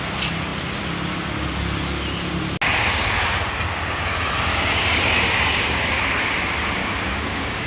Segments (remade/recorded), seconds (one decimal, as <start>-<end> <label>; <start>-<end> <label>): 0.0-4.5 recorded; 4.5-6.1 remade; 6.1-6.8 recorded; 6.8-7.7 remade